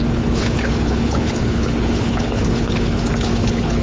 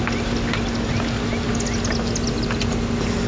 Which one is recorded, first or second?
second